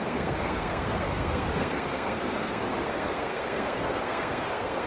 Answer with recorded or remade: remade